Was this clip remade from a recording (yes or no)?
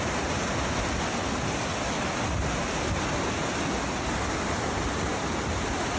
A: no